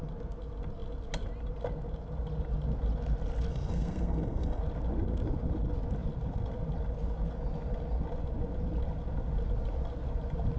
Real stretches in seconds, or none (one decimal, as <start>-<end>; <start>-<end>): 0.0-3.5; 4.6-10.6